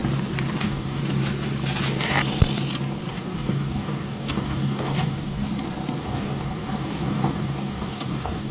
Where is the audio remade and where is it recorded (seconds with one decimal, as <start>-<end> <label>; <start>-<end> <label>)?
0.0-0.6 recorded; 0.6-1.0 remade; 1.0-3.1 recorded; 3.1-5.5 remade; 5.5-6.0 recorded; 6.0-8.5 remade